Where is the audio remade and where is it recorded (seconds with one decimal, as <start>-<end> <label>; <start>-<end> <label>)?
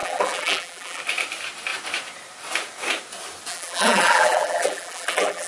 0.0-1.0 remade; 1.0-3.5 recorded; 3.5-5.5 remade